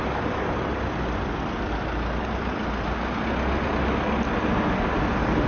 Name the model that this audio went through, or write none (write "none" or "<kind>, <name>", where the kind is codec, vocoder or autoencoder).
none